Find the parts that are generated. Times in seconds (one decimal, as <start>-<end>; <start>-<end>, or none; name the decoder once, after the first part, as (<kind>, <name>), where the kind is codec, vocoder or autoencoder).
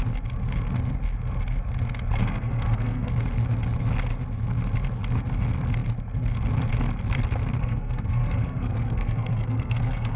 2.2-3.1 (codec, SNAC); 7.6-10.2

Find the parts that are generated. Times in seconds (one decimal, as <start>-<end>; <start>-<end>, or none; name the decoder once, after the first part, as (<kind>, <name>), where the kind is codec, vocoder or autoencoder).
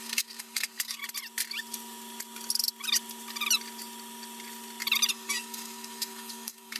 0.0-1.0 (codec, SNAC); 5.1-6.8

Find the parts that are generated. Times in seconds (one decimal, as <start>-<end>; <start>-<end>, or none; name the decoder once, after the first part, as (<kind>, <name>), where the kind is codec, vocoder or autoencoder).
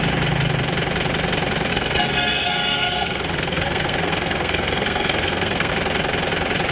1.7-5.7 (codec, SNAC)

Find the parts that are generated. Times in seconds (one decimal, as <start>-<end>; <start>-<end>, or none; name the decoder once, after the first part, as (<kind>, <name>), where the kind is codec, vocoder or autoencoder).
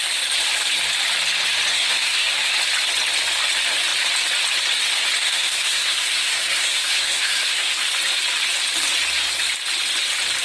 1.7-2.5 (codec, SNAC); 5.2-7.7